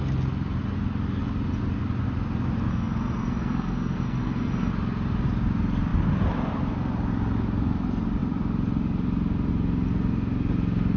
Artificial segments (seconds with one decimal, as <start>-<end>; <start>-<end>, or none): 2.7-4.7

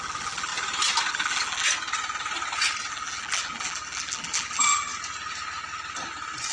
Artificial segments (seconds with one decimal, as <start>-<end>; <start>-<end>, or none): 0.0-0.5; 1.1-1.6; 2.9-4.9